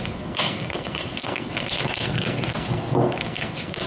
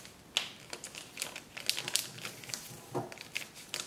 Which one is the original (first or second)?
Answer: second